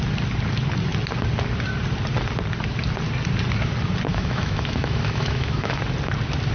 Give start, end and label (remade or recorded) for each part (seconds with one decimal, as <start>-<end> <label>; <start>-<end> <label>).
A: 0.0-4.1 recorded; 4.1-5.8 remade; 5.8-6.5 recorded